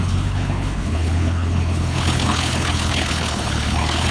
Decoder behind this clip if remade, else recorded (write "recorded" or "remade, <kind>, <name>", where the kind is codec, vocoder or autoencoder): remade, codec, HILCodec